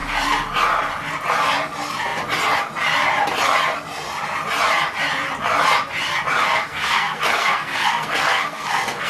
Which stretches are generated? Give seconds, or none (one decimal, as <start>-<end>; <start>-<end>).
6.4-9.1